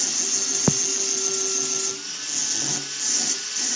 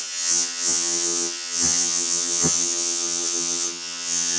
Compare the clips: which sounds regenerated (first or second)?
second